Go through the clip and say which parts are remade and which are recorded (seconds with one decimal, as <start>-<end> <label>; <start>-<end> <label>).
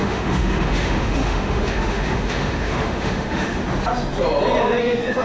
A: 0.0-3.6 remade; 3.6-4.8 recorded; 4.8-5.2 remade